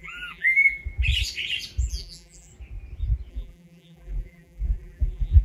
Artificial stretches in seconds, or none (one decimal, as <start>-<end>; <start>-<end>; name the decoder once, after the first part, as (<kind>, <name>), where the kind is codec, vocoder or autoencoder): 0.0-0.8 (vocoder, BigVGAN v2); 1.9-2.5; 3.3-5.4